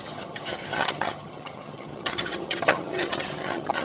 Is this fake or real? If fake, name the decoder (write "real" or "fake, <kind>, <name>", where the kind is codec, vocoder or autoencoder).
fake, vocoder, HiFi-GAN